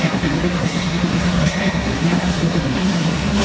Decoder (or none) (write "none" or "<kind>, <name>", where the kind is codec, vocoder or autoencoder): codec, SNAC